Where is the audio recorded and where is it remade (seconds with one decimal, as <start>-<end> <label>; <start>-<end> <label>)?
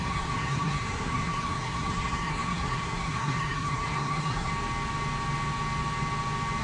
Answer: 0.0-4.5 remade; 4.5-6.6 recorded